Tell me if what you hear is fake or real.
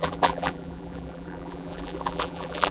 fake